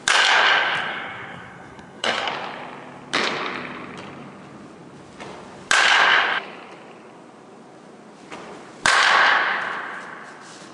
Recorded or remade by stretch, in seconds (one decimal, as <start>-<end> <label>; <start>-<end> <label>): 0.0-0.9 recorded; 0.9-2.3 remade; 2.3-10.7 recorded